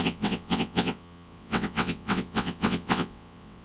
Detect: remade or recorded remade